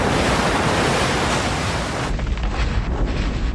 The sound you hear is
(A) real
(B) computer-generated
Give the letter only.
A